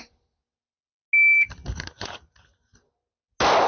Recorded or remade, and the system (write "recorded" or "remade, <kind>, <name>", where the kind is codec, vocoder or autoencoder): recorded